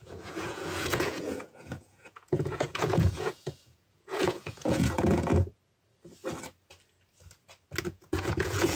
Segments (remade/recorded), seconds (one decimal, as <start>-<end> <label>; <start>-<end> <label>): 0.0-5.3 remade; 5.3-7.8 recorded; 7.8-8.8 remade